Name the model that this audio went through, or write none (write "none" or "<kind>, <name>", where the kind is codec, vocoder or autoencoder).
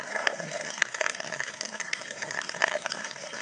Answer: codec, SNAC